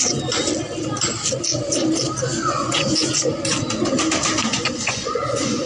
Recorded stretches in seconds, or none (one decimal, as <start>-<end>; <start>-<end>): 0.0-2.3; 3.2-4.5